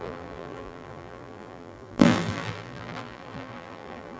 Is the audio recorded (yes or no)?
no